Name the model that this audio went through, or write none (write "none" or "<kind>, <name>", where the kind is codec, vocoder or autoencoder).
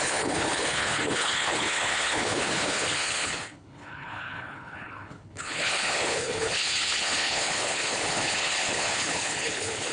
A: codec, HILCodec